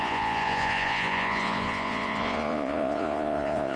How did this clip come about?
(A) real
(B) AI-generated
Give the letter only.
B